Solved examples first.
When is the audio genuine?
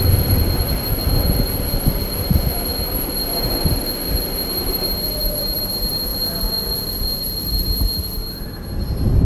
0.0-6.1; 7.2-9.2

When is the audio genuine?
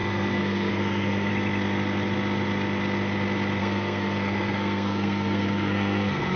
1.3-3.6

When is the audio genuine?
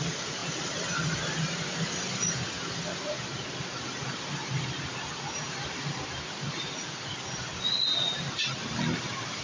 0.0-9.4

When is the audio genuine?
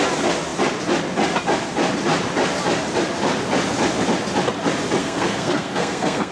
0.0-5.0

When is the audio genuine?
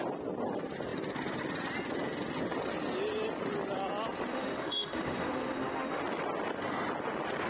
0.0-4.3; 6.0-7.5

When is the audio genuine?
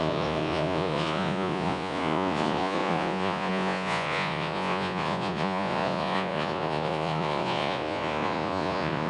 none